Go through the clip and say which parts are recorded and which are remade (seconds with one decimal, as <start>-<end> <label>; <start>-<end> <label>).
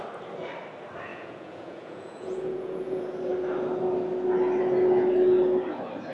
0.0-1.1 recorded; 1.1-3.0 remade; 3.0-6.1 recorded